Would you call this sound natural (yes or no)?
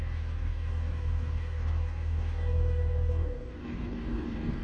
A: no